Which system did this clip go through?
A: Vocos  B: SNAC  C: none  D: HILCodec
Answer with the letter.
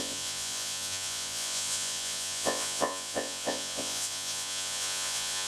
A